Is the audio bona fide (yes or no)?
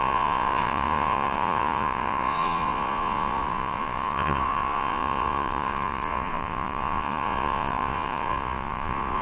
no